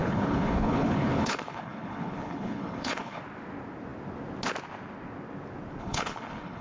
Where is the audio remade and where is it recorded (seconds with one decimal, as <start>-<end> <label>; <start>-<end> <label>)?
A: 0.0-3.2 remade; 3.2-5.8 recorded; 5.8-6.6 remade